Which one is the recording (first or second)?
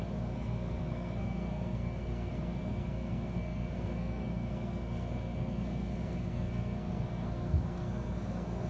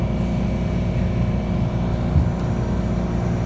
second